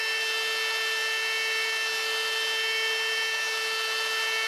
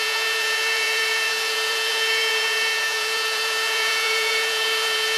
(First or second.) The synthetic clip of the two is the second